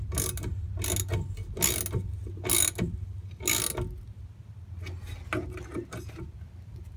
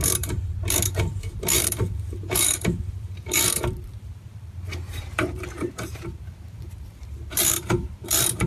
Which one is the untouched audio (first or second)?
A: first